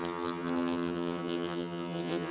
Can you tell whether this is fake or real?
fake